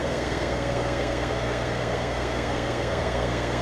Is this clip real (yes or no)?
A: no